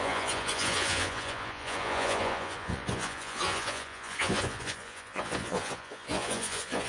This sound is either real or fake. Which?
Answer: fake